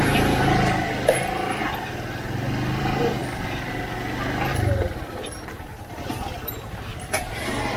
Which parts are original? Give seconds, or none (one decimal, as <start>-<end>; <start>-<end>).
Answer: 0.4-2.8; 3.2-5.5; 6.9-7.8

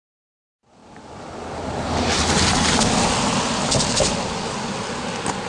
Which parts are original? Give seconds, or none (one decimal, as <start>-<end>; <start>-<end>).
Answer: 0.0-5.5

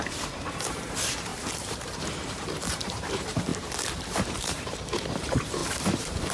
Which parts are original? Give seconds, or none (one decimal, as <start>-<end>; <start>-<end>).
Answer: 3.5-4.1

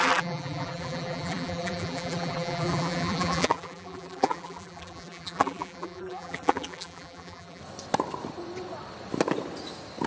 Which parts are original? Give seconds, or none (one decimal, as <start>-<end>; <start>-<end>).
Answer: 7.6-10.1

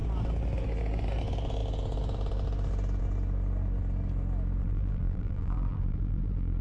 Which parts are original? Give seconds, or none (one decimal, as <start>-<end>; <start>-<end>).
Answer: 0.0-4.6

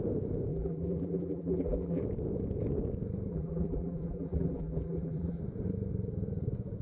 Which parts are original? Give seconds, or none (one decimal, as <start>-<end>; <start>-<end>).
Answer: 0.0-0.5; 2.0-3.3; 5.4-6.8

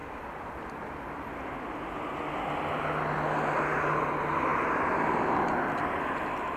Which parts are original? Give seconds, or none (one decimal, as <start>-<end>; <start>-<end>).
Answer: 0.0-6.6